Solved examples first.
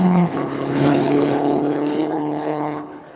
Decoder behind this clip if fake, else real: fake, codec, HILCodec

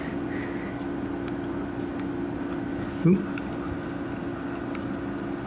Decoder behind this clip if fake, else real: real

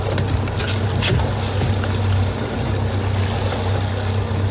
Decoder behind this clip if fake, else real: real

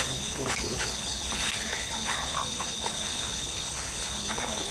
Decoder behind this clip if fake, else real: fake, codec, HILCodec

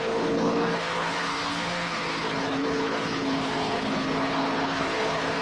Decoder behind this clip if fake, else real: fake, codec, HILCodec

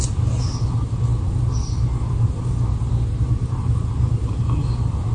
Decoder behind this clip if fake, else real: real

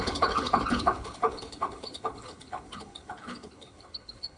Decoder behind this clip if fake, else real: fake, codec, HILCodec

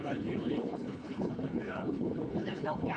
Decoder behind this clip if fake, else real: fake, codec, HILCodec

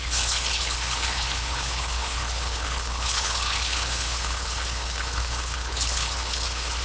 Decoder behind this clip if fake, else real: fake, codec, HILCodec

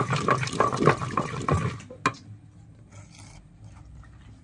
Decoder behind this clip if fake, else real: real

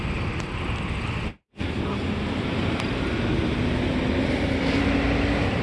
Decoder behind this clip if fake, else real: real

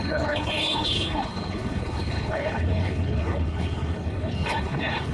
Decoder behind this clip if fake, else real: fake, codec, HILCodec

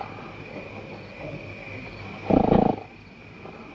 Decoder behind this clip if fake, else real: real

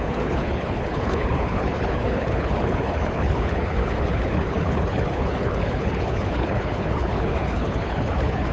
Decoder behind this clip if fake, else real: fake, codec, HILCodec